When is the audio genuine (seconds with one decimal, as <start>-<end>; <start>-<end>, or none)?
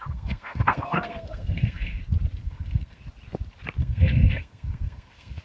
2.0-2.4; 3.0-3.8